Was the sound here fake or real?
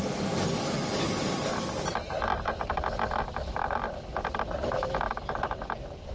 real